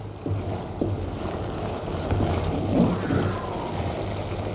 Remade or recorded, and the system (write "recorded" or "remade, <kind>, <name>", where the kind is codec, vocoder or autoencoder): recorded